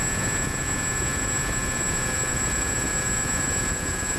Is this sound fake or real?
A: fake